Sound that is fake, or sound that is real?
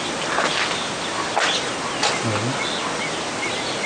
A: real